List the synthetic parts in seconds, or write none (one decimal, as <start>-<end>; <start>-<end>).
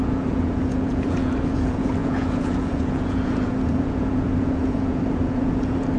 0.0-6.0